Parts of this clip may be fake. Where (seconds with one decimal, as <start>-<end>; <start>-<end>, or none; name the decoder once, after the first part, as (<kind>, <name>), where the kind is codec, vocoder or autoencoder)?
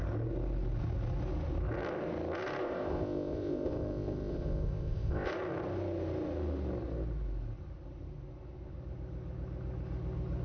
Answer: 2.6-5.3 (codec, ZipCodec)